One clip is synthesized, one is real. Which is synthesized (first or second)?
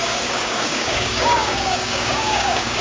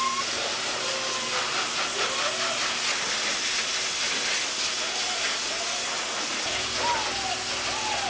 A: first